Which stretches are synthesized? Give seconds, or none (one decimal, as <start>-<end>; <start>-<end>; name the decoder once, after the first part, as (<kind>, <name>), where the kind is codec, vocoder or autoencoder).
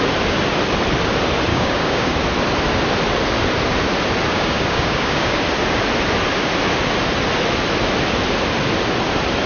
1.5-2.1 (codec, DAC); 4.3-5.4